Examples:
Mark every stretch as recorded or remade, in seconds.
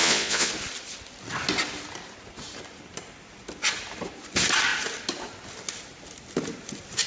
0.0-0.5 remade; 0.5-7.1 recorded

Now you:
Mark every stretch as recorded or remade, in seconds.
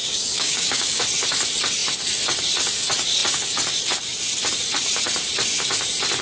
0.0-1.0 remade; 1.0-6.2 recorded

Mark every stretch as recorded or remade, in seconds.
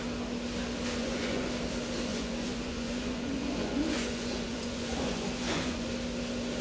0.0-1.0 recorded; 1.0-1.5 remade; 1.5-2.1 recorded; 2.1-5.9 remade; 5.9-6.6 recorded